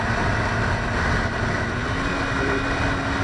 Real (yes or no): yes